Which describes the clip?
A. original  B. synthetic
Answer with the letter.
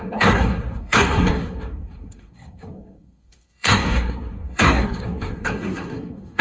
B